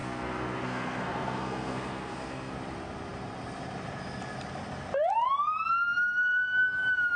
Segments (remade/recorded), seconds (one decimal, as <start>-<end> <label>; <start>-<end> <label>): 0.0-2.5 remade; 2.5-7.2 recorded

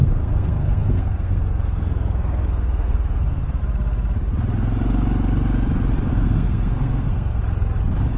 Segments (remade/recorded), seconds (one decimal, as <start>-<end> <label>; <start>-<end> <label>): 0.0-3.6 remade; 3.6-6.1 recorded; 6.1-7.4 remade; 7.4-8.2 recorded

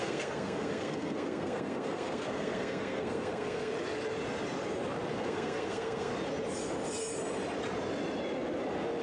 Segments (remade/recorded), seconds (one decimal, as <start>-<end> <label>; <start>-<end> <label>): 0.0-3.7 remade; 3.7-5.1 recorded; 5.1-6.1 remade; 6.1-9.0 recorded

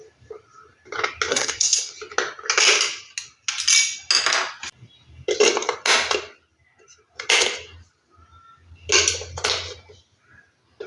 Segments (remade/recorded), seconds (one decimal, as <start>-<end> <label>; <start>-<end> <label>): 0.0-1.3 recorded; 1.3-1.9 remade; 1.9-10.9 recorded

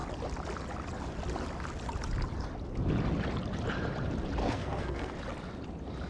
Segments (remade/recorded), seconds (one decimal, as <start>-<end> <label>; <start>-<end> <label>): 0.0-4.4 recorded; 4.4-5.1 remade; 5.1-6.1 recorded